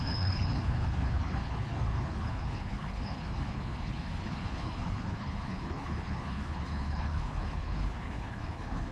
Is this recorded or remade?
remade